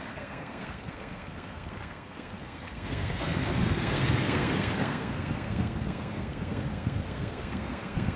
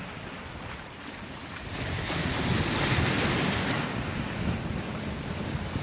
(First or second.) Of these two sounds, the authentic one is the second